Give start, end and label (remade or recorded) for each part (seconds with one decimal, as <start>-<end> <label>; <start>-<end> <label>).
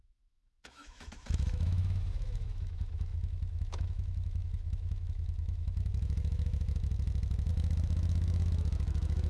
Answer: 0.0-9.3 remade